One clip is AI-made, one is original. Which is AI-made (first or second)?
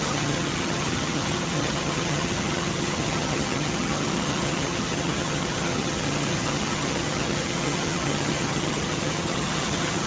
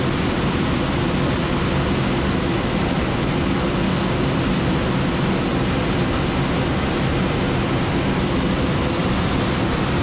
first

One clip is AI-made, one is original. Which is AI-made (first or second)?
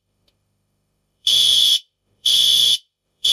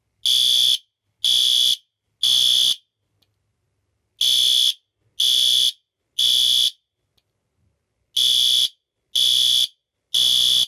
first